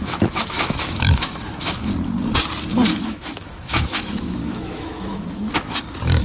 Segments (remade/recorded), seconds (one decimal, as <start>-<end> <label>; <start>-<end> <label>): 0.0-1.8 remade; 1.8-2.9 recorded; 2.9-5.8 remade; 5.8-6.2 recorded